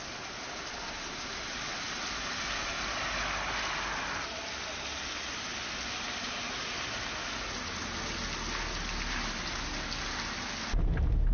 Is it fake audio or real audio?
real